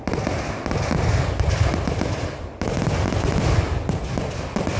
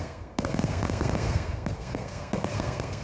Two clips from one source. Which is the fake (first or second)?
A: second